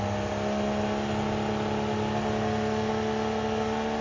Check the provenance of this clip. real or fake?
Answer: real